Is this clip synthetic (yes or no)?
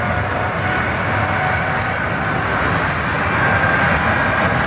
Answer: no